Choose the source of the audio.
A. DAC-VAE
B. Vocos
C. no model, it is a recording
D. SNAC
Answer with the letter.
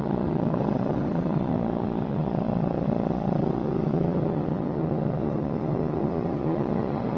B